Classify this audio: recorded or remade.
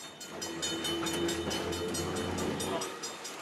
recorded